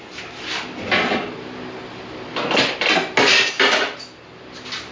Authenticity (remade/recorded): recorded